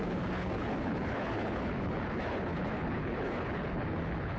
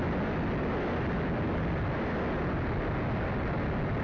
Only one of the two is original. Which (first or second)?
second